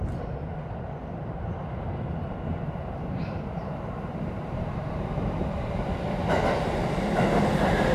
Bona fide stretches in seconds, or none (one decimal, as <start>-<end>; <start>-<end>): 0.0-1.2; 5.9-7.9